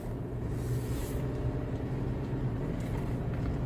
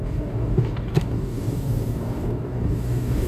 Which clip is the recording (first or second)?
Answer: first